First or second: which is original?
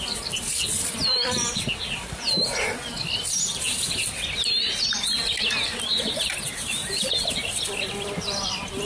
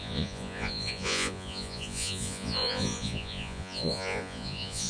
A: first